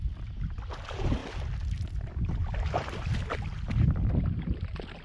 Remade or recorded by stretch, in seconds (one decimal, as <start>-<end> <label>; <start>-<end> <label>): 0.0-5.0 recorded